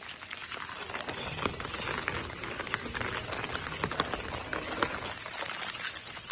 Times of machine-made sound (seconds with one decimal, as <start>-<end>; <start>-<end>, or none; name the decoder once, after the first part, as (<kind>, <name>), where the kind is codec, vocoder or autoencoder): none